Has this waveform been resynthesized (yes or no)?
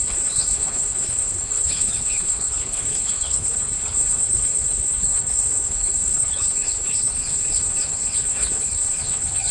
yes